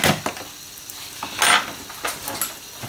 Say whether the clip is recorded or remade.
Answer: recorded